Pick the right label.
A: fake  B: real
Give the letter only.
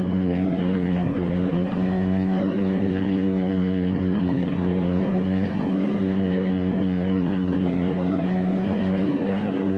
A